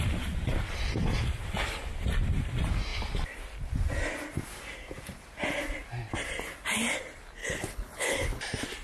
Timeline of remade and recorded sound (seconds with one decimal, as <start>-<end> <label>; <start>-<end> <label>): 0.0-7.4 recorded; 7.4-8.4 remade; 8.4-8.8 recorded